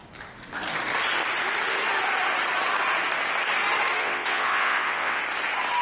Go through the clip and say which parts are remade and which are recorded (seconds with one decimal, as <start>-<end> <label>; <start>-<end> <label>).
0.0-4.0 recorded; 4.0-5.2 remade; 5.2-5.8 recorded